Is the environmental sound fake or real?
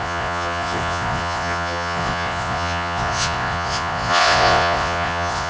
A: fake